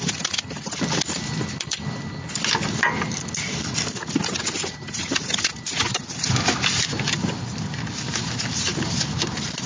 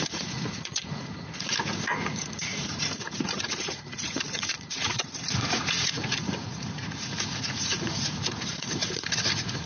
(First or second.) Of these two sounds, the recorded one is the first